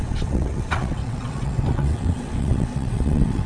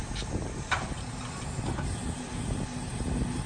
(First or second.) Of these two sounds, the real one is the second